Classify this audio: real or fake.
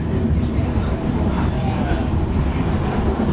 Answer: real